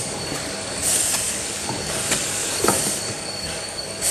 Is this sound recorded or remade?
remade